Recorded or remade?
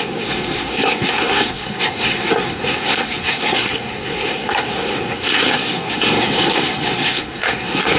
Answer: remade